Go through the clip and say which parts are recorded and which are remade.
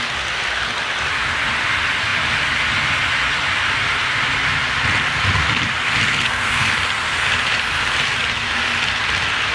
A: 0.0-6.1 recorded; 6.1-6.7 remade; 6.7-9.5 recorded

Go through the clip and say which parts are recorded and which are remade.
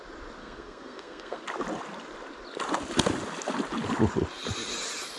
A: 0.0-0.4 recorded; 0.4-1.4 remade; 1.4-5.2 recorded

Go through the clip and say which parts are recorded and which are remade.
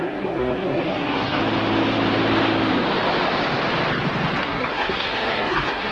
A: 0.0-1.4 remade; 1.4-4.4 recorded; 4.4-5.9 remade